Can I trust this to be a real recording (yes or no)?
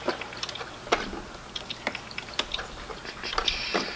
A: yes